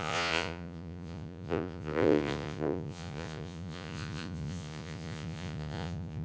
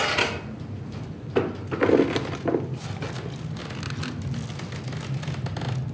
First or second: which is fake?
first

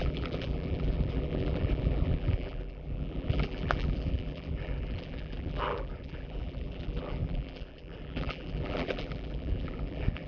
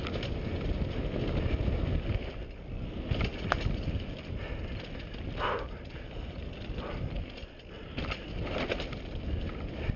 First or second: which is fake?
first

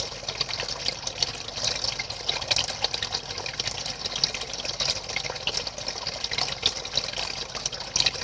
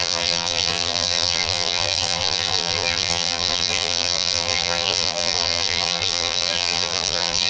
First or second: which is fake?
second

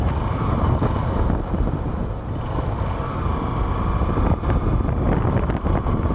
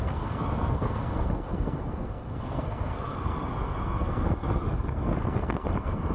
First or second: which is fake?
second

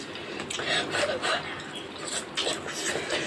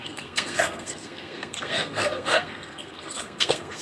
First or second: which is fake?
second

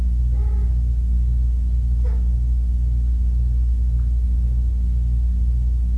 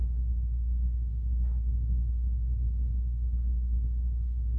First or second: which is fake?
second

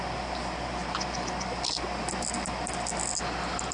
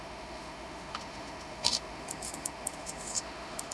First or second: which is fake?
second